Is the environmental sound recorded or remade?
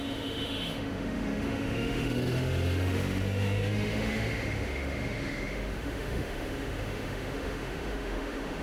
remade